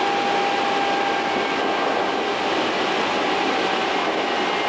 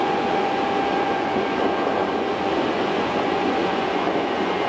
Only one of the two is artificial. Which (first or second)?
second